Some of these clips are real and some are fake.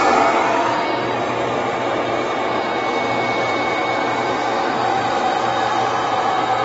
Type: real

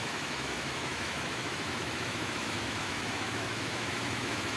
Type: fake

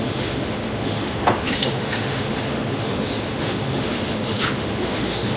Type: fake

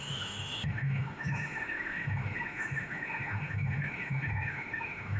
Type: fake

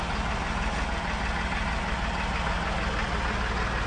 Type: real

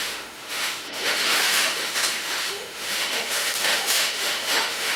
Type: fake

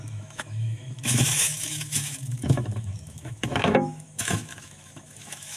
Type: fake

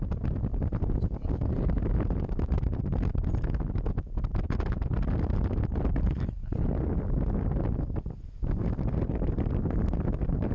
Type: real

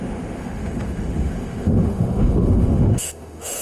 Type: fake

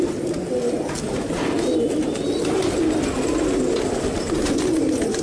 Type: real